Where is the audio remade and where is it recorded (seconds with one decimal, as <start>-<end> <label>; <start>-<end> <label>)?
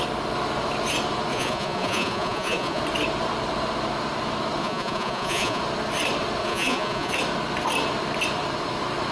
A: 0.0-1.3 recorded; 1.3-2.8 remade; 2.8-4.6 recorded; 4.6-5.6 remade; 5.6-6.4 recorded; 6.4-7.1 remade; 7.1-9.1 recorded